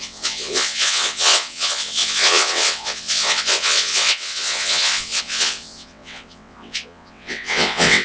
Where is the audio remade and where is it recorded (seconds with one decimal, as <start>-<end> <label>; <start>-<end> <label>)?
0.0-8.0 remade